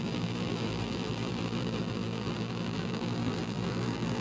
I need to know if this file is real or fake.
fake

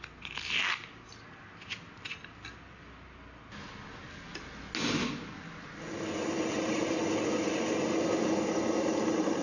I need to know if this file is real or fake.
real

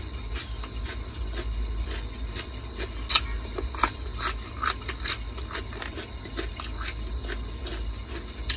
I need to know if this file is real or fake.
real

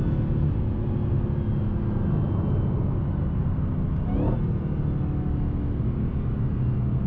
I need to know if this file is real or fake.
real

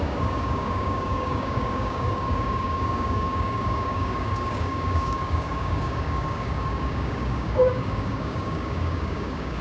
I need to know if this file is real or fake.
fake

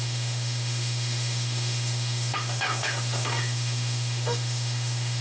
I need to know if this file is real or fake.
fake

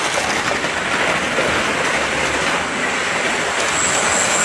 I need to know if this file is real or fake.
real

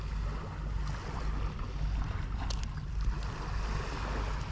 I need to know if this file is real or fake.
real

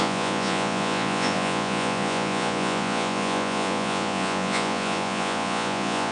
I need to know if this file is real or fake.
fake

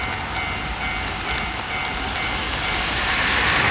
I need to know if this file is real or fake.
real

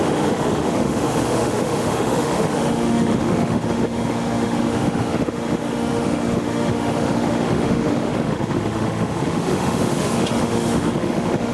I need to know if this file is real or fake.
fake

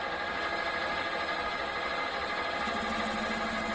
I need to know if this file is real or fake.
real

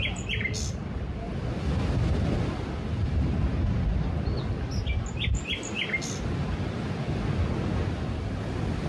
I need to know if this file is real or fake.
real